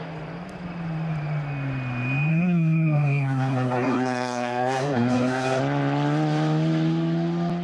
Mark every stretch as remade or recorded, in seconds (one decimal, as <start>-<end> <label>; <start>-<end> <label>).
0.0-2.3 recorded; 2.3-5.6 remade; 5.6-7.6 recorded